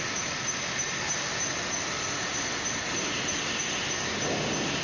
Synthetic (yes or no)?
no